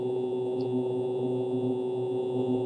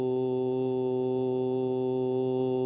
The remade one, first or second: first